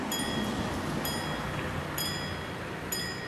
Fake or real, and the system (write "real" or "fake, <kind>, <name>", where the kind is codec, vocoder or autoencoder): real